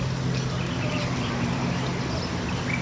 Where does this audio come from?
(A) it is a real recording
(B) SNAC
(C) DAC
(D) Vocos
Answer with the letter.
A